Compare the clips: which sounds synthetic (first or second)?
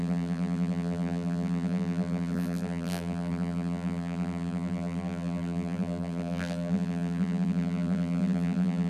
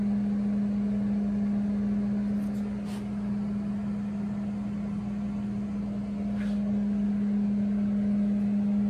first